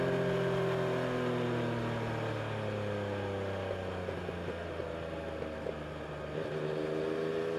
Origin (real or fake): real